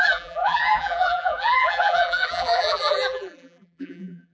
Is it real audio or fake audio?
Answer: fake